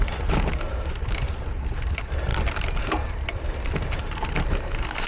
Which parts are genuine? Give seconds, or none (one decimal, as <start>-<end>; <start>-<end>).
2.3-4.0